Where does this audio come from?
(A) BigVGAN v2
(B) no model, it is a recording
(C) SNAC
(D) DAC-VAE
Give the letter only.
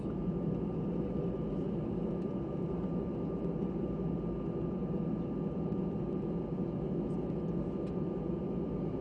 B